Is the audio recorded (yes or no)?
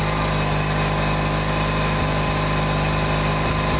yes